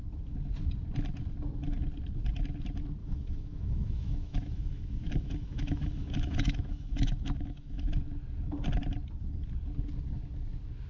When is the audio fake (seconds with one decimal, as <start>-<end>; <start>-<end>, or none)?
3.0-7.9